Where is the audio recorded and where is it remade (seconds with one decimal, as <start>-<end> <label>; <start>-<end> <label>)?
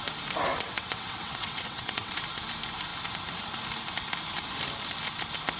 0.0-0.5 recorded; 0.5-2.2 remade; 2.2-5.6 recorded